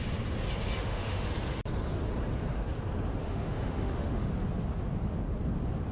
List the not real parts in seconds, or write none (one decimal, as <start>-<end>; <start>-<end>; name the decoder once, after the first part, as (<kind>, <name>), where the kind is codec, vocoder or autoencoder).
0.8-1.3 (autoencoder, DAC-VAE); 3.2-4.3